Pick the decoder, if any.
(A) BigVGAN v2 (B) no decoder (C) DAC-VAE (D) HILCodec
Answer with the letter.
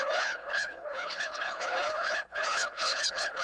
D